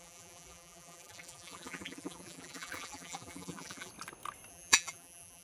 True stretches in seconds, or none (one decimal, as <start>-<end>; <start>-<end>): 3.9-4.5